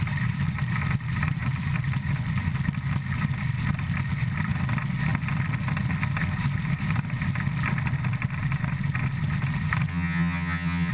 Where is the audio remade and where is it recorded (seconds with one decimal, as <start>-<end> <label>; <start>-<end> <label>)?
0.0-9.9 recorded; 9.9-10.9 remade